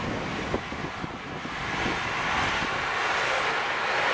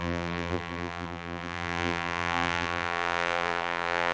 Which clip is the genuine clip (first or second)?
first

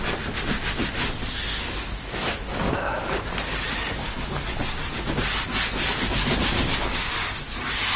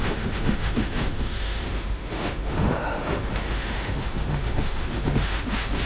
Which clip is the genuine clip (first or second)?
first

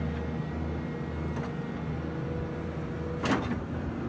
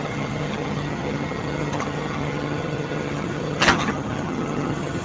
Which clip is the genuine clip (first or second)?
first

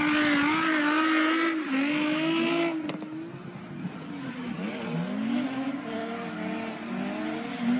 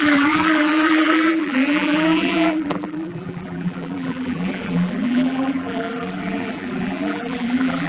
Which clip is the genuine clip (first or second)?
first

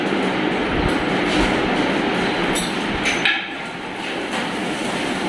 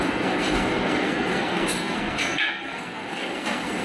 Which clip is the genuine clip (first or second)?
first